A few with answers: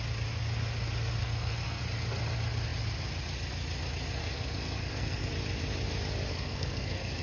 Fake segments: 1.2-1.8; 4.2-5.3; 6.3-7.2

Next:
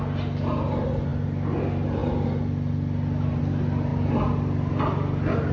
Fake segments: none

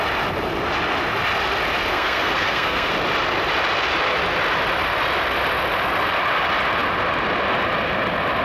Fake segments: 1.9-2.9

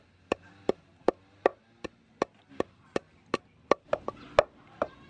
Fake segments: none

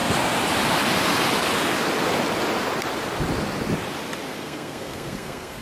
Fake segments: 4.3-5.6

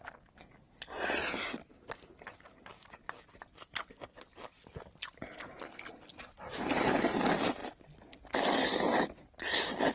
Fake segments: none